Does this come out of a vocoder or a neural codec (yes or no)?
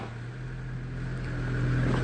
no